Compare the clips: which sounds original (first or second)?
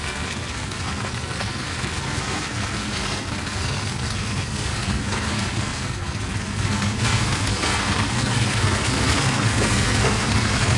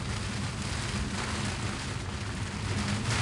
second